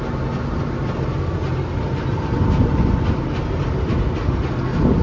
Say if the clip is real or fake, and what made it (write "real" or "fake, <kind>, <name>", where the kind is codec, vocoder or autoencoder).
real